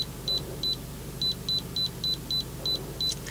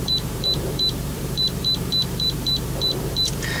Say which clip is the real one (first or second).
first